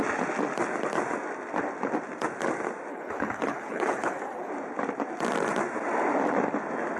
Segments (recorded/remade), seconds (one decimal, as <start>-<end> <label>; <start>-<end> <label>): 0.0-2.9 recorded; 2.9-4.5 remade; 4.5-7.0 recorded